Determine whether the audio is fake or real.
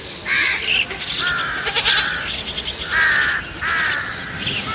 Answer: real